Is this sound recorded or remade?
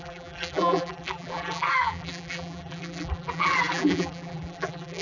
remade